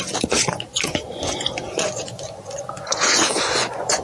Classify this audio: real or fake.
fake